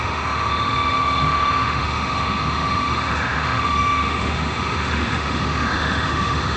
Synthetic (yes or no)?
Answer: yes